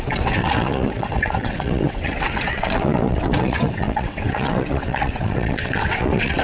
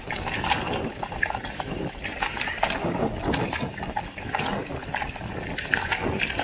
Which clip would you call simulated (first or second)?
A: first